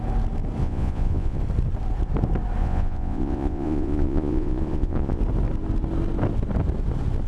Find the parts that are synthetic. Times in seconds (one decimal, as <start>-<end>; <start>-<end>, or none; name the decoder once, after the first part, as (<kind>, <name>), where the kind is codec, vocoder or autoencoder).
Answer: 0.6-1.4 (vocoder, Vocos); 2.6-5.2